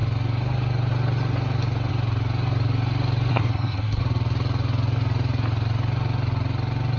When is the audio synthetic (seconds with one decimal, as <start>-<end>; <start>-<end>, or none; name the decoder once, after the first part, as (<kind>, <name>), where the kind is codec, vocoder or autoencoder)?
3.3-4.0 (codec, SNAC)